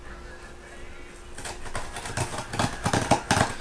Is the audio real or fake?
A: real